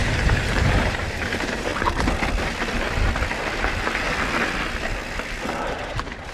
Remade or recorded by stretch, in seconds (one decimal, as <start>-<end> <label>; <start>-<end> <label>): 0.0-1.7 remade; 1.7-5.5 recorded; 5.5-6.3 remade

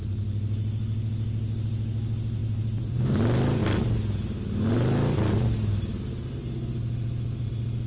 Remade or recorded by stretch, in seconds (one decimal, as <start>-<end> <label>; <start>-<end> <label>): 0.0-2.4 recorded; 2.4-3.0 remade; 3.0-7.9 recorded

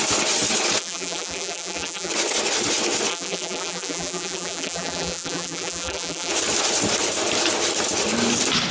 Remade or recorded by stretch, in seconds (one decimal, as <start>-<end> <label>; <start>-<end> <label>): 0.0-0.8 recorded; 0.8-2.1 remade; 2.1-3.1 recorded; 3.1-6.3 remade; 6.3-8.7 recorded

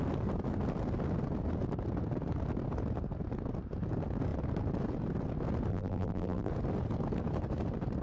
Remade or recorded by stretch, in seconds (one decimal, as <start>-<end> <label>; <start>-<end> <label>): 0.0-5.7 recorded; 5.7-6.5 remade; 6.5-8.0 recorded

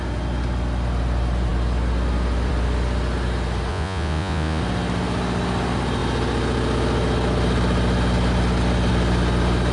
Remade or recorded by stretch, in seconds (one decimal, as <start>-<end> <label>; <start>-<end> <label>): 0.0-3.7 recorded; 3.7-4.6 remade; 4.6-9.7 recorded

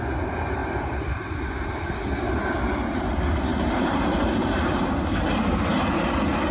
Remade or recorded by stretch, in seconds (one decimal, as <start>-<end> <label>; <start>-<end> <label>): 0.0-0.6 recorded; 0.6-1.8 remade; 1.8-3.5 recorded; 3.5-5.9 remade; 5.9-6.5 recorded

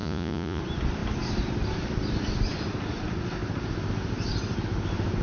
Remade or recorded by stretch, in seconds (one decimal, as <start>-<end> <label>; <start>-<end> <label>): 0.0-0.6 remade; 0.6-5.2 recorded

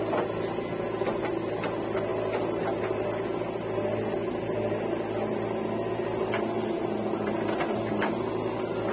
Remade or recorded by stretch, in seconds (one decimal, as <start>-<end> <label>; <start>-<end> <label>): 0.0-8.9 recorded